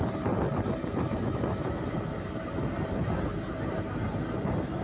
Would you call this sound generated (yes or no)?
no